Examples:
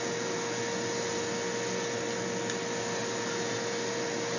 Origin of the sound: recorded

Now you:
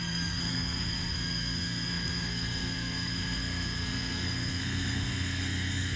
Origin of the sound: remade